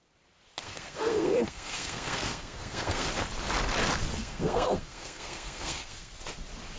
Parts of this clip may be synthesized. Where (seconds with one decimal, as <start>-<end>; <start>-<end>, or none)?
0.6-3.1; 4.2-6.1